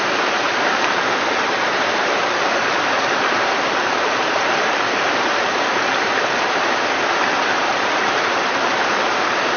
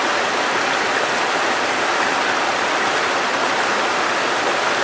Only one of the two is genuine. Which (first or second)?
second